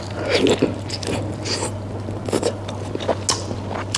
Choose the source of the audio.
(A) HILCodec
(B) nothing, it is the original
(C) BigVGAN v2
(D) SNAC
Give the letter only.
B